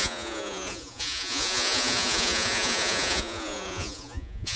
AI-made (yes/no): yes